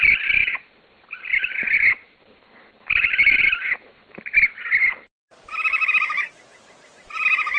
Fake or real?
real